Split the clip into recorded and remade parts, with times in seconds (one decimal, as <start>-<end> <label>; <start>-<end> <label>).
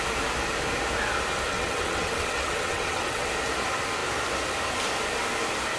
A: 0.0-1.5 recorded; 1.5-3.3 remade; 3.3-5.8 recorded